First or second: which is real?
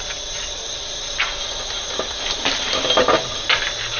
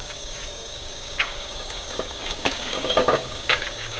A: first